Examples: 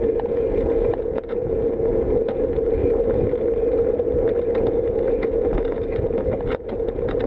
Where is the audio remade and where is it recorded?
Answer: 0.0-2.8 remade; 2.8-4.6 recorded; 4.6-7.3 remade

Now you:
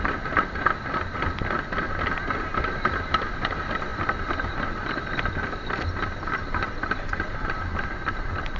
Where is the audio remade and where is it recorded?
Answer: 0.0-8.6 recorded

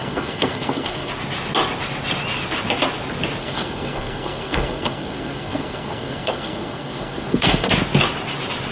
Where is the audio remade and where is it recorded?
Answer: 0.0-1.1 remade; 1.1-3.4 recorded; 3.4-7.7 remade; 7.7-8.7 recorded

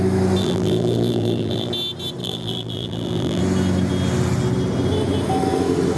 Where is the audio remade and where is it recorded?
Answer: 0.0-0.4 recorded; 0.4-1.7 remade; 1.7-2.2 recorded; 2.2-3.4 remade; 3.4-6.0 recorded

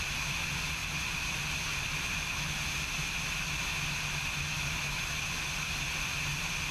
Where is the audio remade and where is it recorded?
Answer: 0.0-4.5 recorded; 4.5-5.3 remade; 5.3-6.7 recorded